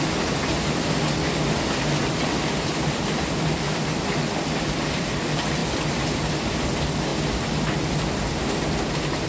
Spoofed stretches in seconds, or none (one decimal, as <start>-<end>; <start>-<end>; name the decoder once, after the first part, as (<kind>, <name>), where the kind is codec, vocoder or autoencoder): 0.0-0.5 (vocoder, BigVGAN v2); 2.5-5.6; 6.6-7.1; 7.9-9.3